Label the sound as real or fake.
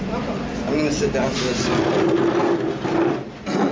real